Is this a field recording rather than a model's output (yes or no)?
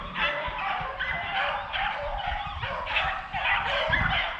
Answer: yes